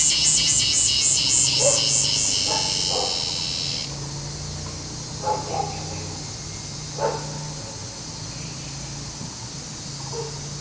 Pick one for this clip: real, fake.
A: real